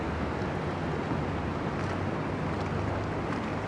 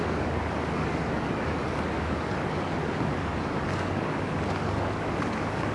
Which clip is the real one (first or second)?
first